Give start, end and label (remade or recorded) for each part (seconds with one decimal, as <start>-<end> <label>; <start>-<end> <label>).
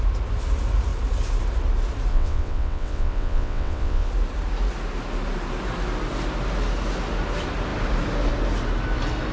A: 0.0-2.1 recorded; 2.1-4.1 remade; 4.1-9.3 recorded